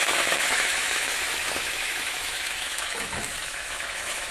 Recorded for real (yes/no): no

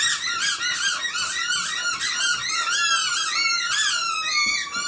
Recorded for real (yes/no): yes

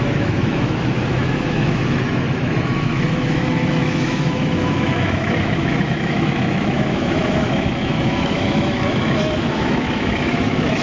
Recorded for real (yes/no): no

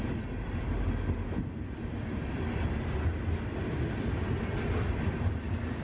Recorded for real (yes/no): yes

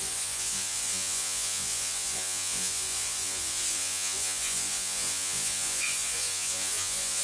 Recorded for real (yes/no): no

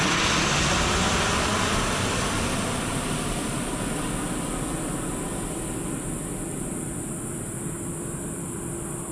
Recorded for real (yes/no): yes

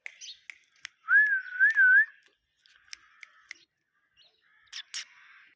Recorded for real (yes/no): yes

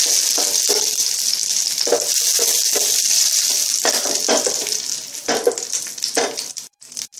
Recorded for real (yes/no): yes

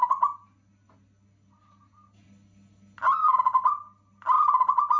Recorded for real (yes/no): yes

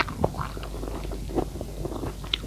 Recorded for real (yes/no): yes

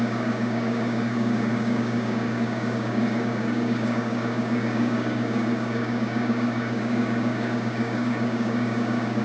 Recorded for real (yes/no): no